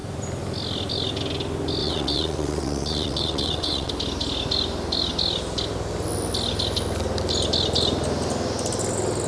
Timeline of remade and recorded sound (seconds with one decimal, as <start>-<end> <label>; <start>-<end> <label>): 0.0-1.8 recorded; 1.8-3.9 remade; 3.9-9.3 recorded